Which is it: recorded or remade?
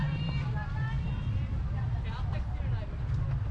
recorded